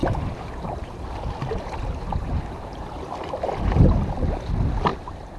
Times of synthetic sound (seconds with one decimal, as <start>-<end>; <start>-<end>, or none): 0.0-2.8; 4.9-5.4